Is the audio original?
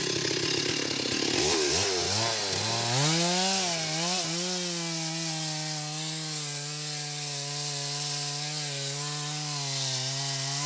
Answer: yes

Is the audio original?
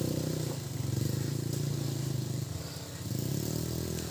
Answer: yes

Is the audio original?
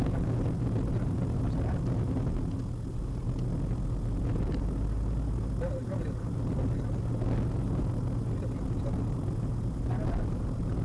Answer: yes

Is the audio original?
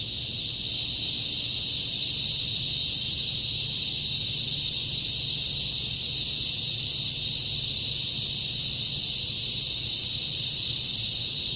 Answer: yes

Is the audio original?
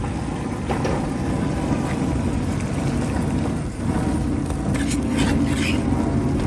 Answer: yes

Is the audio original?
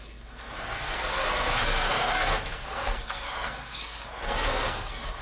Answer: no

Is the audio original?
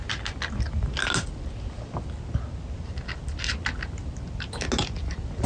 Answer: yes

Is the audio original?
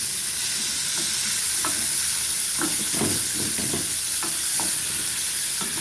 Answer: yes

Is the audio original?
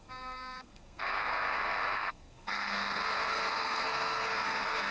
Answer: no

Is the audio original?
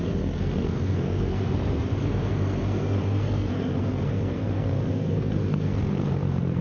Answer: no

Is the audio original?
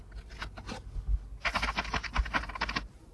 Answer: yes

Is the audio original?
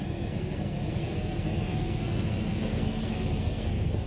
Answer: no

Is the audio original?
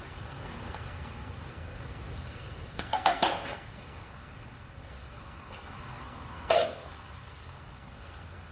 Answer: no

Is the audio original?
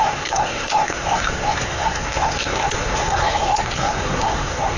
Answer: no